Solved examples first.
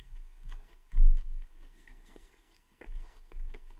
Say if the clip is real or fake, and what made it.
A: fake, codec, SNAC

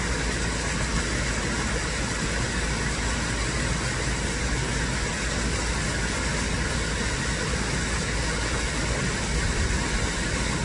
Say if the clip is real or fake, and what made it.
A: real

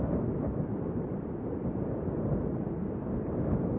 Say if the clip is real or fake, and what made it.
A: real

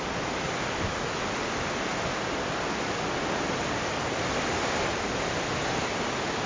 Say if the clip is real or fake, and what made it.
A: real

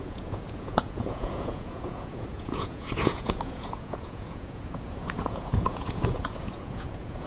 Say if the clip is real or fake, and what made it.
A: fake, vocoder, Vocos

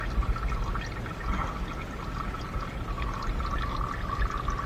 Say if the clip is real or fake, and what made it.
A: real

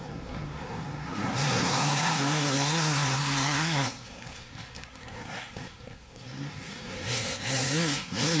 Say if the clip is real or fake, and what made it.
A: fake, codec, SNAC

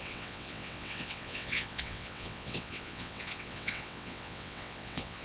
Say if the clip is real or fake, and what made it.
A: fake, vocoder, WaveNeXt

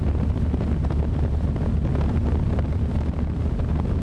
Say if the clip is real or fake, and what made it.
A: real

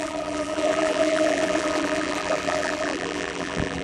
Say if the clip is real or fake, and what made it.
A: fake, vocoder, BigVGAN v2